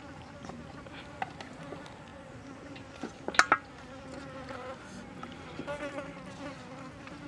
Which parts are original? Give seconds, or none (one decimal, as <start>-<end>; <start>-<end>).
0.0-7.3